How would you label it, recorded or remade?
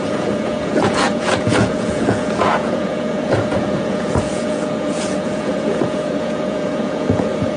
remade